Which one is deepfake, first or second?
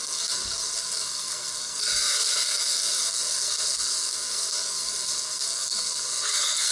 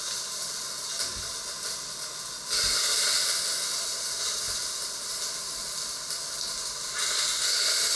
first